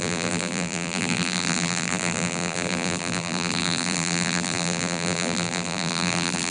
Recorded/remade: remade